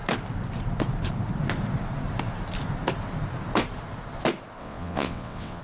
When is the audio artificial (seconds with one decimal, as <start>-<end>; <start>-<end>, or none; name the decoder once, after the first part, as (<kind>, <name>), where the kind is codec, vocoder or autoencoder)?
4.6-5.6 (vocoder, WaveNeXt)